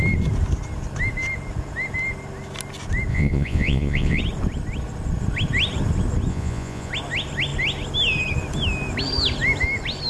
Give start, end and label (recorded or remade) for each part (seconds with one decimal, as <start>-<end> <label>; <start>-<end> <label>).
0.0-3.1 recorded; 3.1-4.2 remade; 4.2-6.3 recorded; 6.3-6.9 remade; 6.9-10.1 recorded